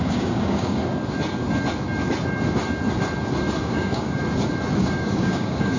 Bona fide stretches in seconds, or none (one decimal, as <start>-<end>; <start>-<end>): 0.8-3.6; 4.2-4.8